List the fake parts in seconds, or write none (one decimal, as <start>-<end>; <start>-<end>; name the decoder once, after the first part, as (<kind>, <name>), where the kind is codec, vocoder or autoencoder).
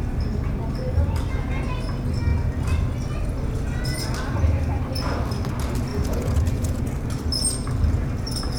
5.9-6.8 (vocoder, Vocos)